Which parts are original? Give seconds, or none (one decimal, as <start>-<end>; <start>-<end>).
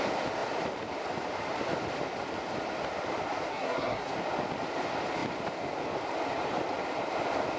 0.0-3.5; 4.1-7.6